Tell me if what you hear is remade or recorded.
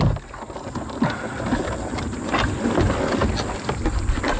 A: recorded